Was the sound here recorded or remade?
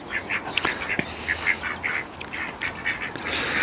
recorded